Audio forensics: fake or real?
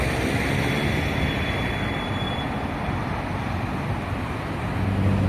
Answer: real